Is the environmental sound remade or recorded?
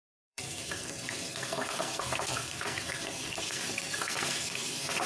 remade